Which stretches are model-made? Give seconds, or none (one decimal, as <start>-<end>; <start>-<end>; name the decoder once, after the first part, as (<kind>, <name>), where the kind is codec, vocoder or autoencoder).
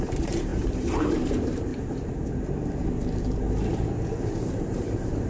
0.0-1.7 (vocoder, BigVGAN v2); 4.2-5.3